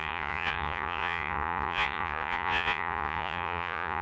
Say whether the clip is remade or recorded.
remade